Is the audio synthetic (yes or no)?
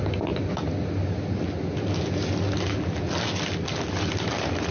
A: no